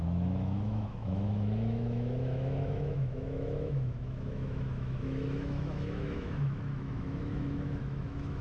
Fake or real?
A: fake